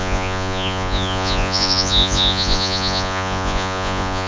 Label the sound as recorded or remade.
remade